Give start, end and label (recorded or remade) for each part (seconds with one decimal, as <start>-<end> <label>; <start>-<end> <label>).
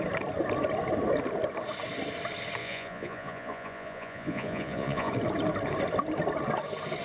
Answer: 0.0-2.6 recorded; 2.6-5.1 remade; 5.1-7.0 recorded